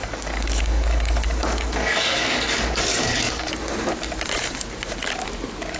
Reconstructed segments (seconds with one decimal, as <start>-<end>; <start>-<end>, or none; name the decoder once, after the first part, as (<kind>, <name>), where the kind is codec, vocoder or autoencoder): 0.0-3.5 (codec, DAC)